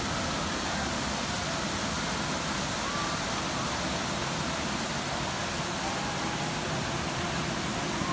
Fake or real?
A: real